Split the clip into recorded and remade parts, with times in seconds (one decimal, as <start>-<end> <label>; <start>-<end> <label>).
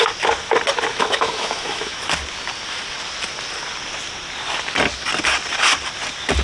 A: 0.0-0.9 recorded; 0.9-2.0 remade; 2.0-6.4 recorded